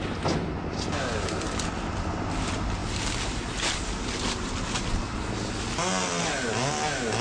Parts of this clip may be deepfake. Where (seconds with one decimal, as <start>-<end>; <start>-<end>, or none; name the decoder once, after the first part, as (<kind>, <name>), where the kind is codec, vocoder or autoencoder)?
none